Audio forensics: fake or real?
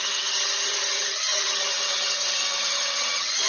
fake